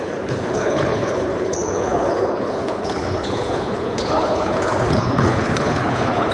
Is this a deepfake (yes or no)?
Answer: yes